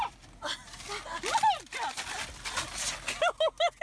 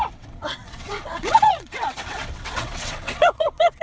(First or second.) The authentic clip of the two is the first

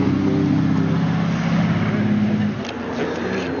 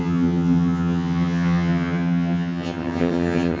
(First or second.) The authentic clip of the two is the first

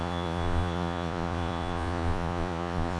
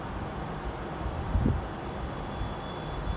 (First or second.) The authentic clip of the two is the second